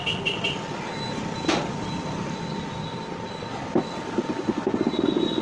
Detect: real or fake real